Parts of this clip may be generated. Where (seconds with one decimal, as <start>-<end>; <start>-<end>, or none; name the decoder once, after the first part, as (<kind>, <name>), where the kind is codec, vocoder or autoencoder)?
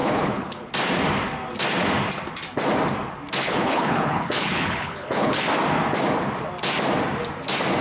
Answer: 0.0-0.7 (codec, HILCodec); 3.4-5.4